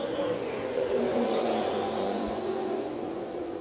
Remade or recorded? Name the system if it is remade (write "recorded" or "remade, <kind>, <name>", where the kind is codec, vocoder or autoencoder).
remade, vocoder, Vocos